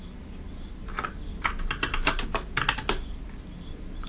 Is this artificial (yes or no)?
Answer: no